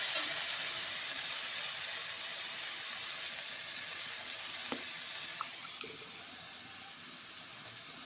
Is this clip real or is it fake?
real